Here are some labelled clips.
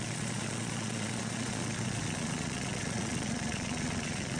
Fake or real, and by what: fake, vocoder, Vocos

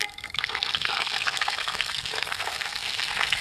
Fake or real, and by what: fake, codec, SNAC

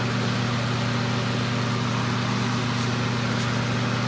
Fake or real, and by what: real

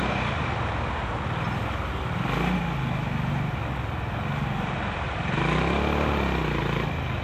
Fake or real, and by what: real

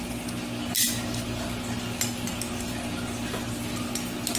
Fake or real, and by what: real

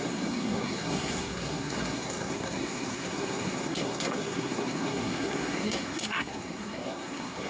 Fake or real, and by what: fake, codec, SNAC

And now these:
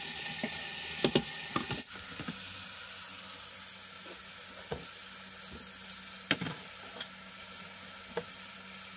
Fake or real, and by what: real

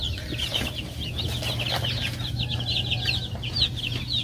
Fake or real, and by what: real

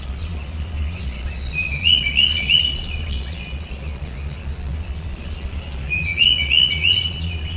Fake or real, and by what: fake, vocoder, Vocos